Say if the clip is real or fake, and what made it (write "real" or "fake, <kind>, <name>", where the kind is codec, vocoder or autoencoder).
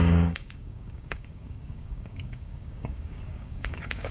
fake, codec, DAC